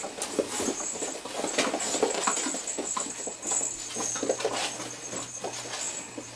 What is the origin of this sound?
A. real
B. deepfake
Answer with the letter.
A